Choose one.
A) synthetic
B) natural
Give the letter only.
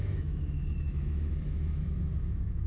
A